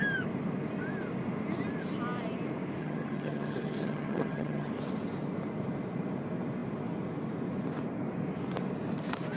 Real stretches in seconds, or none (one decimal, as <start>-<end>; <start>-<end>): 0.0-2.8; 4.7-9.4